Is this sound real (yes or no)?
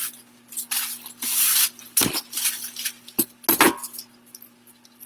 yes